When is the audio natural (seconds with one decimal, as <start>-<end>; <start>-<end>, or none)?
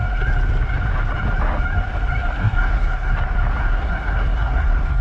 0.0-2.4; 3.1-3.6